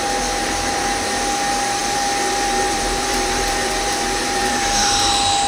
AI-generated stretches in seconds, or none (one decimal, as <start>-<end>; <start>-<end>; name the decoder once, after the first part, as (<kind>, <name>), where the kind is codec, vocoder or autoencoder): 1.8-5.1 (vocoder, BigVGAN v2)